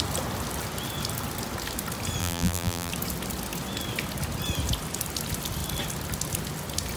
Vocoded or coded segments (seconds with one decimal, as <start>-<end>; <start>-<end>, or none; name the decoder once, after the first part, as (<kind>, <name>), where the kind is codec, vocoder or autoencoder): 2.2-2.9 (vocoder, BigVGAN v2)